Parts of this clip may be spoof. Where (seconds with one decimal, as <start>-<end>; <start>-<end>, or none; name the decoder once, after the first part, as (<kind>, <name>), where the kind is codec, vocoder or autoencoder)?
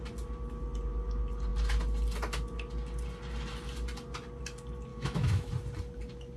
4.9-5.5 (autoencoder, DAC-VAE)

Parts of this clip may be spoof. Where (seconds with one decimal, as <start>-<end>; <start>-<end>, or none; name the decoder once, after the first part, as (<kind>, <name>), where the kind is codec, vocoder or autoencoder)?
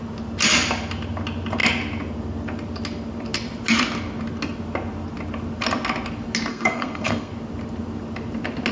6.5-7.3 (codec, SNAC)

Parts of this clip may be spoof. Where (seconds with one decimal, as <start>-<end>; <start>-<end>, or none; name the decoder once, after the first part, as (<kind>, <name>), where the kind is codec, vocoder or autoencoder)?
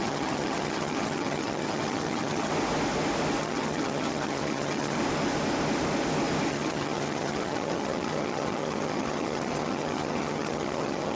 0.0-2.5 (vocoder, HiFi-GAN); 3.4-5.0; 6.5-11.2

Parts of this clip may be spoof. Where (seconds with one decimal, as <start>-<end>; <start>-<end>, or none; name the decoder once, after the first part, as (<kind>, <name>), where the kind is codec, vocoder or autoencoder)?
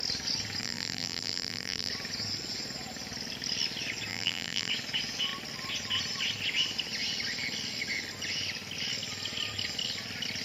0.6-1.9 (vocoder, BigVGAN v2); 4.1-4.7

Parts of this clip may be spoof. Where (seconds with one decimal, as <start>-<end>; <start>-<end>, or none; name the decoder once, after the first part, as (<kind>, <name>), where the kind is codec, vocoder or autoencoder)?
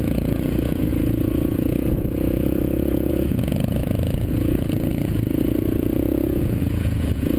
0.0-7.4 (vocoder, Vocos)